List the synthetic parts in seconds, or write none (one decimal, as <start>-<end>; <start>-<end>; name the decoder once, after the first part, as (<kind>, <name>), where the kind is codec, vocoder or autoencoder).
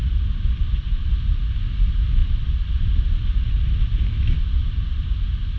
none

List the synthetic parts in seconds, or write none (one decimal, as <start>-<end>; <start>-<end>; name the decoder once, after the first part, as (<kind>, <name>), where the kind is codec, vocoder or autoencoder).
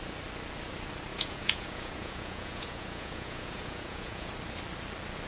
1.1-4.3 (vocoder, Vocos)